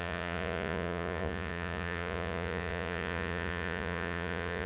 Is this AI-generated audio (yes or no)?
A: yes